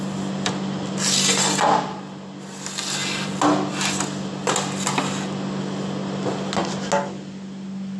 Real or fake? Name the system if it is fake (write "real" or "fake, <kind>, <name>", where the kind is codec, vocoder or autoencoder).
real